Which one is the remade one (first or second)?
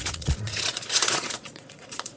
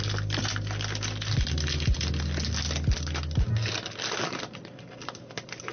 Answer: first